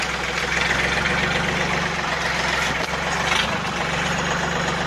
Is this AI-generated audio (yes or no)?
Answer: no